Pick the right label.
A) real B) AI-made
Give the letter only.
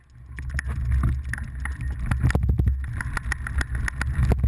A